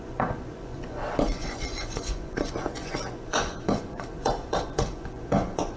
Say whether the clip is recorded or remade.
remade